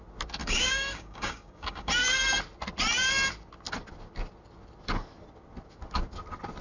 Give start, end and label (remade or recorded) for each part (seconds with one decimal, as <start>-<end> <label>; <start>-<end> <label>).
0.0-0.4 recorded; 0.4-1.9 remade; 1.9-6.6 recorded